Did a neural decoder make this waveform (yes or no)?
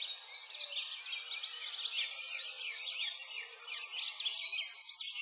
no